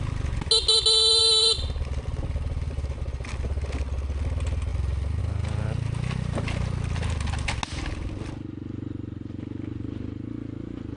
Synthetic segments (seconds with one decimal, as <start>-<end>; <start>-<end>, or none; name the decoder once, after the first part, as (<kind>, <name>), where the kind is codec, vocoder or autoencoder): none